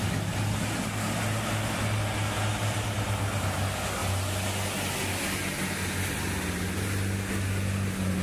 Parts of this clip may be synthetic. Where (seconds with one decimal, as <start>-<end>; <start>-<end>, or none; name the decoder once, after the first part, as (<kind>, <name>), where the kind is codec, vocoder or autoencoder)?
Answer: none